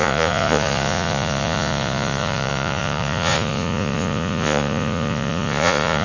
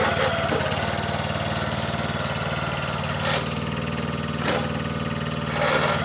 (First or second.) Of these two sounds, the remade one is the first